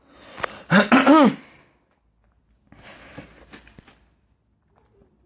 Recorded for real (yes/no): yes